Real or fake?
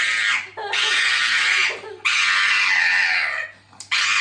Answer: real